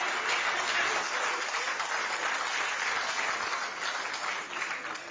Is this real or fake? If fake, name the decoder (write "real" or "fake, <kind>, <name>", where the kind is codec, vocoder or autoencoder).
real